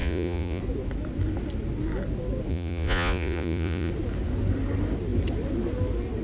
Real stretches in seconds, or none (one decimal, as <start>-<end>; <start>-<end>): 0.6-2.5; 3.9-6.2

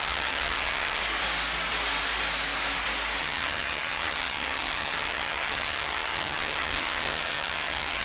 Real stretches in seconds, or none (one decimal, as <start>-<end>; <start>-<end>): 1.0-3.2

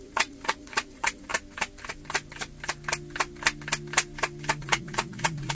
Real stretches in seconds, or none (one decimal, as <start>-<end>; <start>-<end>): 1.3-4.6